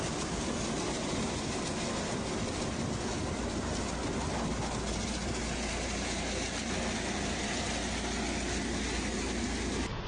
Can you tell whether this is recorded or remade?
recorded